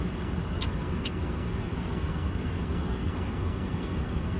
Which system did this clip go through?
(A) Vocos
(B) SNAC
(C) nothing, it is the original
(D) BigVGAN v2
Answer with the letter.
B